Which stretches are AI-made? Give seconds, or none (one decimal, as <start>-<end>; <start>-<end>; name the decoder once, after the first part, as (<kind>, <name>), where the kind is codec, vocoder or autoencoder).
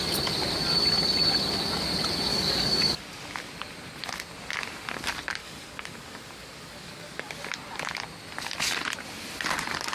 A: 2.3-3.0 (codec, DAC); 5.4-7.3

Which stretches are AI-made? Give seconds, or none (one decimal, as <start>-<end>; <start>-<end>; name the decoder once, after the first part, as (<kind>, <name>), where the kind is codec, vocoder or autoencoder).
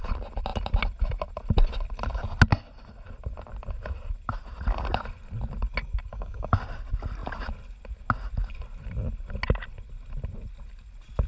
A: 6.1-6.6 (codec, DAC)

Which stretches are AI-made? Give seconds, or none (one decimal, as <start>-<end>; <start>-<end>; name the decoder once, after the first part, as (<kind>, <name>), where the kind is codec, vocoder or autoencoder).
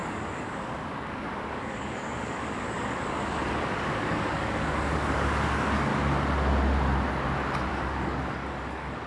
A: 0.0-5.9 (codec, DAC); 7.7-9.1